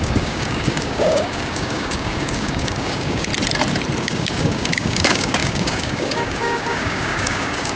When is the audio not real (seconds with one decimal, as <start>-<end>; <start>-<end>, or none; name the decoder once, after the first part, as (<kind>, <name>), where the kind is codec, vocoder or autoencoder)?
0.0-3.3 (codec, DAC); 4.0-7.8

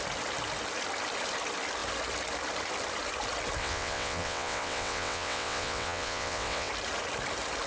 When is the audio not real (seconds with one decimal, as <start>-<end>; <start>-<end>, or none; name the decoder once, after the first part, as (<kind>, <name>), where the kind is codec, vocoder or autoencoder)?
3.6-6.7 (vocoder, WaveNeXt)

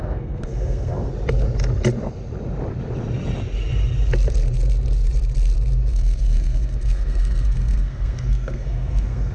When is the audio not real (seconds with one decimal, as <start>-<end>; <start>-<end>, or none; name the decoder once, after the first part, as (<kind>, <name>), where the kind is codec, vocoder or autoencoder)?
0.0-1.1 (codec, SNAC); 5.9-9.3

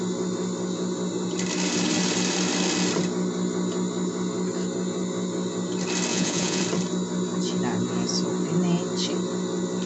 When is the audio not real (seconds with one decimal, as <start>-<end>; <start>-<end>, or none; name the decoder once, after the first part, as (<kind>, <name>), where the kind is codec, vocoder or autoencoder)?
6.1-6.6 (vocoder, Vocos)

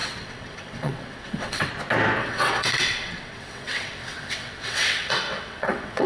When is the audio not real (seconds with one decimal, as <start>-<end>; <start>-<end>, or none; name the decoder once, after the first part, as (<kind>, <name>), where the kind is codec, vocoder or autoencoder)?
0.0-1.7 (vocoder, WaveNeXt); 2.2-6.1

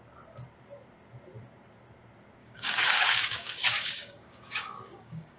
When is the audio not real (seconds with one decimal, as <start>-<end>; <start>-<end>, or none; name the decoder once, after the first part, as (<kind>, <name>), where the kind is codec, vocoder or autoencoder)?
2.4-5.4 (codec, DAC)